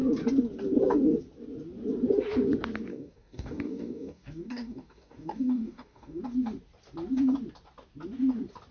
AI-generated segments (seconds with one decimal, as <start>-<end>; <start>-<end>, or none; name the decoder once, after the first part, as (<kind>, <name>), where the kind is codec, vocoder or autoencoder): 2.9-6.2 (codec, DAC)

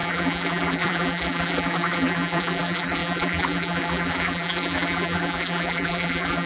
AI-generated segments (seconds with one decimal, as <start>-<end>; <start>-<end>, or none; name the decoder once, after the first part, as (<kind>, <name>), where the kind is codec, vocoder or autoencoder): 0.0-6.5 (vocoder, BigVGAN v2)

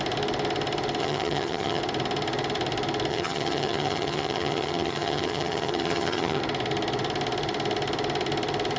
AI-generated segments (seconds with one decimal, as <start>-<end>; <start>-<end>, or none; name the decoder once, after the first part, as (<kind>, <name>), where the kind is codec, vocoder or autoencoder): 1.0-1.8 (vocoder, HiFi-GAN); 3.1-6.4

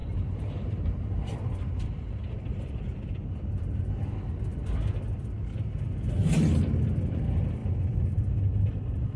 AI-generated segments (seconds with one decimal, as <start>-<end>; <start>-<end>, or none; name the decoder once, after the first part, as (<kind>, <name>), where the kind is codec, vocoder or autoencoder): 0.0-3.8 (vocoder, BigVGAN v2)

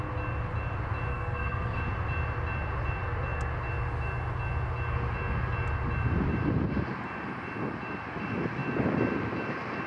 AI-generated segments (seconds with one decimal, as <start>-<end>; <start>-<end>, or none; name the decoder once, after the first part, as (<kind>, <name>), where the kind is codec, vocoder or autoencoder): 1.1-1.8 (codec, SNAC)

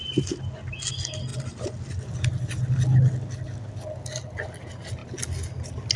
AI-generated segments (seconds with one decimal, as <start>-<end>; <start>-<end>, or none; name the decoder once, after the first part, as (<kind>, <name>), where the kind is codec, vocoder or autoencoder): none

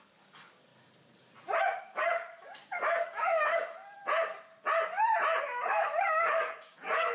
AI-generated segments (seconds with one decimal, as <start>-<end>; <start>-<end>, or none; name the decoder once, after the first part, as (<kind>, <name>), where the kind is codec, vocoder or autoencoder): 0.0-0.7 (codec, DAC); 1.8-4.0; 5.4-7.1